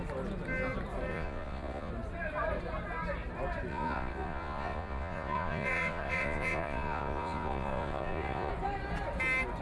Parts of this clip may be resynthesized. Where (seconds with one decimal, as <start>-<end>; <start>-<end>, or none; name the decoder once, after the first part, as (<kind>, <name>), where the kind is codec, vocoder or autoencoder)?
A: 1.1-1.9 (vocoder, Vocos); 3.7-8.5

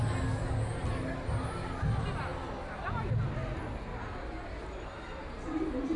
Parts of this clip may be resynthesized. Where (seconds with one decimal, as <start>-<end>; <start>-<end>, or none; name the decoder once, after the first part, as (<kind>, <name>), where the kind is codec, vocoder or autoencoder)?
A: none

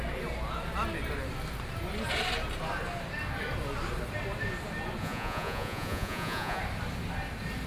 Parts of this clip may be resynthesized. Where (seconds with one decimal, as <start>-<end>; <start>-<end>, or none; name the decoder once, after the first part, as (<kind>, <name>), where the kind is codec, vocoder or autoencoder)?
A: 5.0-6.6 (vocoder, Vocos)